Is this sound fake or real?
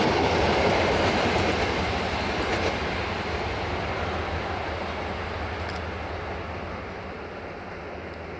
real